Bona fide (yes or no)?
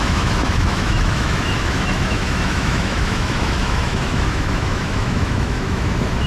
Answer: no